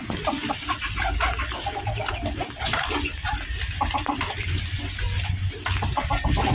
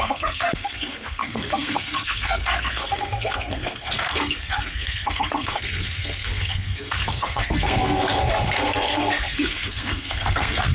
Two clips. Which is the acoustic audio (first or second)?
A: first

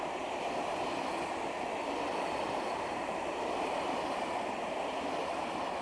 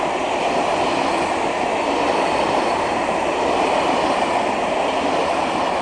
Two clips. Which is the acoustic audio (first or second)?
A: second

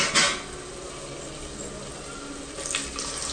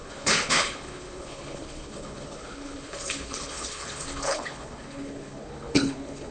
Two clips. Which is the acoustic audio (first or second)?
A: first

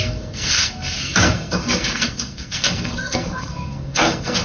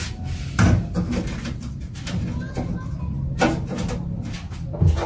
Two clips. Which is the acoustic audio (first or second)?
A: second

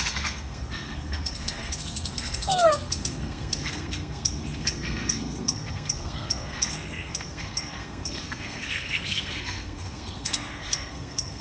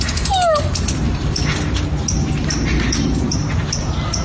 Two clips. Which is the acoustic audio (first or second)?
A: second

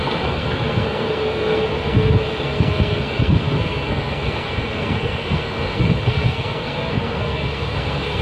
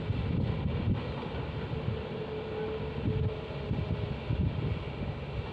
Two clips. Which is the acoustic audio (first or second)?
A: second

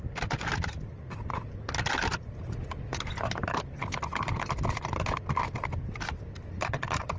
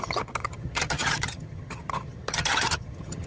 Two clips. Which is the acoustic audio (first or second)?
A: first